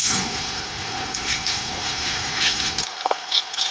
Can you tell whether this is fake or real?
fake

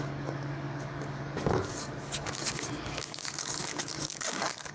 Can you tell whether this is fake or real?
fake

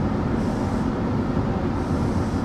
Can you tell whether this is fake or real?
real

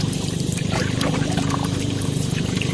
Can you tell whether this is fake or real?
fake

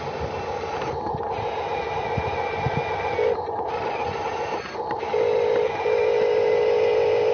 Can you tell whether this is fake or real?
real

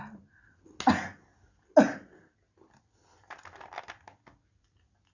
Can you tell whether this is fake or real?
real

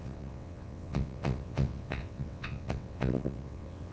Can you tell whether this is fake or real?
fake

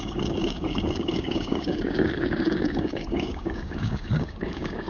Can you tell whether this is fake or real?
fake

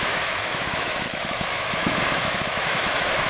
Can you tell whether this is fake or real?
fake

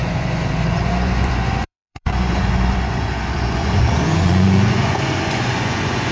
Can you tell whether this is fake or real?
fake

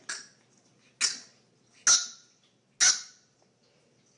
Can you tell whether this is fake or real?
real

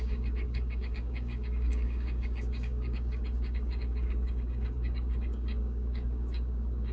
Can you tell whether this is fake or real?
fake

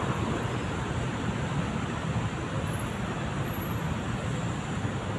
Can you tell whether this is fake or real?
real